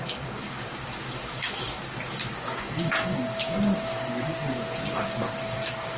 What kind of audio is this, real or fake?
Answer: fake